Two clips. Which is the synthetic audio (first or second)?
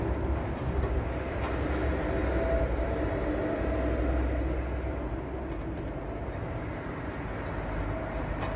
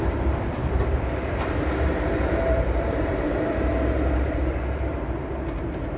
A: second